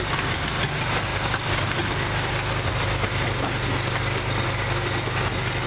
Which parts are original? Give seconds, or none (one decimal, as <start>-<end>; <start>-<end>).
0.0-5.7